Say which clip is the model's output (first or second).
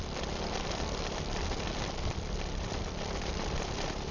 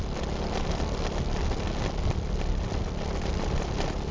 first